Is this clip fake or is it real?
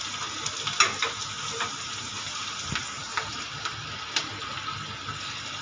real